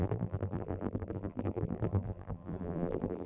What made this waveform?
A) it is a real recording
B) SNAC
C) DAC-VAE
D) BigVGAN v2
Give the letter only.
D